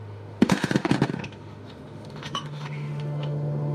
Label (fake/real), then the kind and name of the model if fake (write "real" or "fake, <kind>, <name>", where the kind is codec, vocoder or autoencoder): fake, autoencoder, DAC-VAE